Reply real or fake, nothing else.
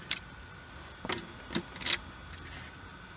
real